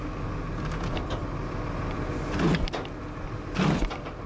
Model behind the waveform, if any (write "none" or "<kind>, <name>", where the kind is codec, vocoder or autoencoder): none